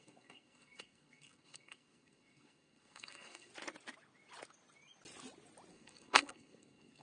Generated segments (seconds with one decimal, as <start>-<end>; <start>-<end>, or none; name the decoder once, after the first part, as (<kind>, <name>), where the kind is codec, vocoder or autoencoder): 0.0-3.5 (codec, SNAC); 5.7-7.0